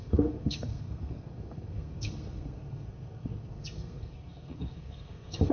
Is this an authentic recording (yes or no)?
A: no